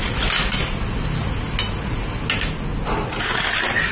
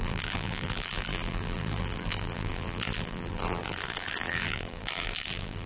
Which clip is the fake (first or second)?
second